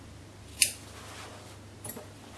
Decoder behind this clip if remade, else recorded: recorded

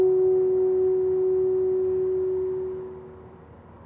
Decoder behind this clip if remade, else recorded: recorded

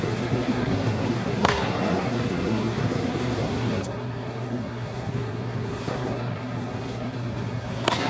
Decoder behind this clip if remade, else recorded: remade, codec, SNAC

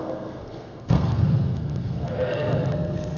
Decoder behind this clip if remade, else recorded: remade, codec, SNAC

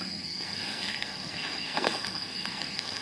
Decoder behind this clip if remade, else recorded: remade, codec, SNAC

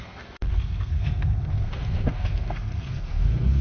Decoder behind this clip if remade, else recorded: remade, codec, SNAC